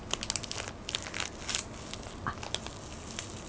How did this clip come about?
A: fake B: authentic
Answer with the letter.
B